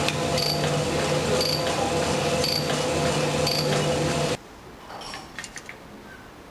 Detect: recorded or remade recorded